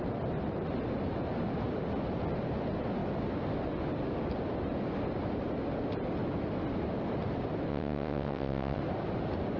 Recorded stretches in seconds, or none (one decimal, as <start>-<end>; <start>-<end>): 0.0-7.7; 8.8-9.6